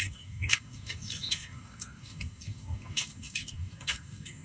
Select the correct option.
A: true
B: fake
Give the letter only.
B